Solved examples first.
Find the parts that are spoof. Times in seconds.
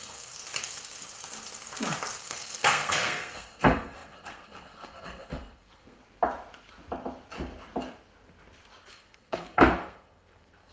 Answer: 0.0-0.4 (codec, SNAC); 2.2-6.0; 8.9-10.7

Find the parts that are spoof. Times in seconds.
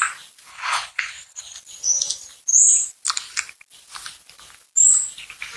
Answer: 0.5-1.6 (codec, HILCodec)